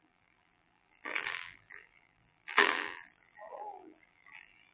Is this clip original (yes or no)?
no